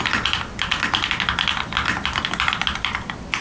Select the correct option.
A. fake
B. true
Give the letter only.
B